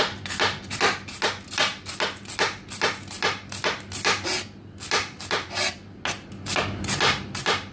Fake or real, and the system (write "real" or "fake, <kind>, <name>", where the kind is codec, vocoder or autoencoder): real